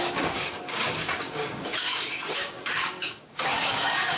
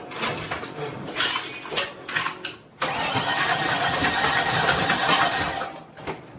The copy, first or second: first